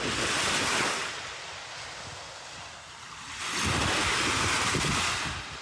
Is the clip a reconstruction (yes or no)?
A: no